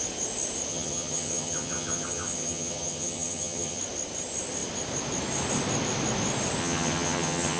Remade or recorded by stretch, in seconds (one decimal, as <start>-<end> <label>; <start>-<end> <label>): 0.0-0.7 recorded; 0.7-3.8 remade; 3.8-6.6 recorded; 6.6-7.6 remade